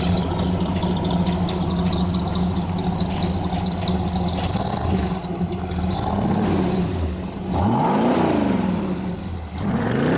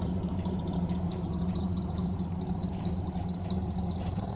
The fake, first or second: second